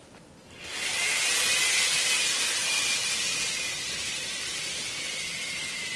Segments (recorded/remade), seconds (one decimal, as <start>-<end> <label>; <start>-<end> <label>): 0.0-2.6 recorded; 2.6-5.6 remade; 5.6-6.0 recorded